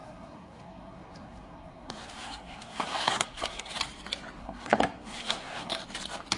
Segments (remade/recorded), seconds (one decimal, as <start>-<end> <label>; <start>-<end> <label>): 0.0-3.8 remade; 3.8-4.4 recorded; 4.4-5.8 remade; 5.8-6.4 recorded